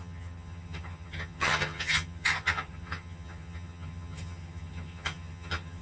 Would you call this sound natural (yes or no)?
no